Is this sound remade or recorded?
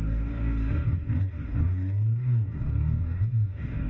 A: remade